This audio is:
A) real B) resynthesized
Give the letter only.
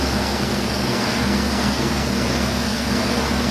B